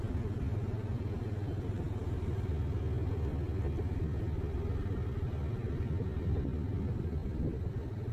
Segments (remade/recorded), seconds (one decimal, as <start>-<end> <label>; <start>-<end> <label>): 0.0-8.1 recorded